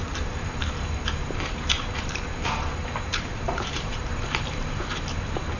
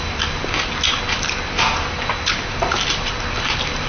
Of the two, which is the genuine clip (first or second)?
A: second